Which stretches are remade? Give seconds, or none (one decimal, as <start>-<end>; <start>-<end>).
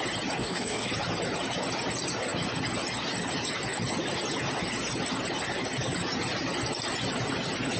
0.4-0.9